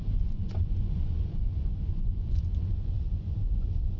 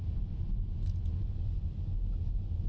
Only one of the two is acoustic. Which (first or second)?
second